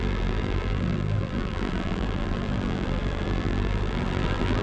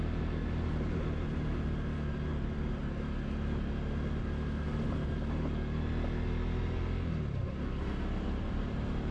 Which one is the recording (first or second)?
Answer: second